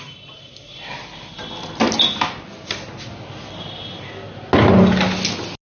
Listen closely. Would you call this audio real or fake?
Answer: real